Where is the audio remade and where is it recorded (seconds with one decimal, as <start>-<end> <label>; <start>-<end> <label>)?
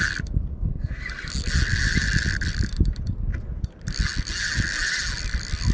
0.0-0.5 recorded; 0.5-1.0 remade; 1.0-5.7 recorded